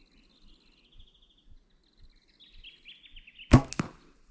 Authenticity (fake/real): real